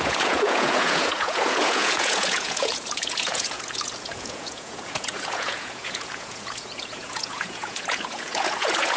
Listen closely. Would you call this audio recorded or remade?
remade